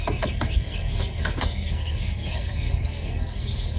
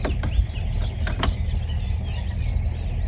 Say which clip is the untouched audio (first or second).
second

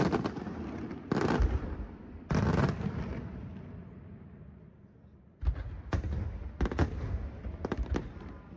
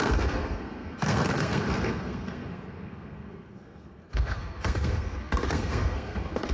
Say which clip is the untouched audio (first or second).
first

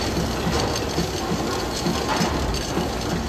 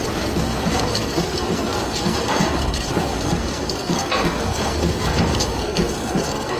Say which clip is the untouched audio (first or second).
first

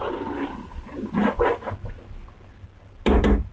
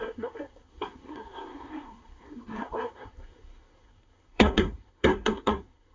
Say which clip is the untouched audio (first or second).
first